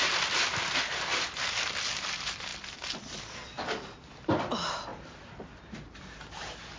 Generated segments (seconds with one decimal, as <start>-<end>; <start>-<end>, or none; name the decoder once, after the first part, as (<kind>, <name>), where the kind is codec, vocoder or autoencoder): none